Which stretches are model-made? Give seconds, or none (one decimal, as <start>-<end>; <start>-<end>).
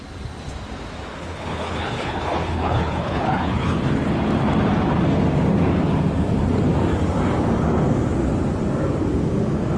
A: 1.1-3.9